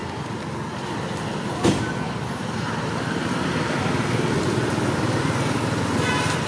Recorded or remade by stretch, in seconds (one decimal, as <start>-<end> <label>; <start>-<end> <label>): 0.0-6.5 recorded